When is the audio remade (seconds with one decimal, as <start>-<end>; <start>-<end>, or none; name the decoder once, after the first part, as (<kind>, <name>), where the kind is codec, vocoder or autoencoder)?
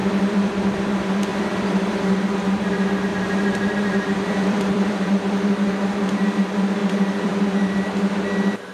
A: 0.0-0.8 (vocoder, BigVGAN v2); 1.3-2.2; 3.1-5.1; 6.8-7.4